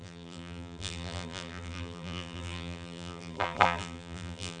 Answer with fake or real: fake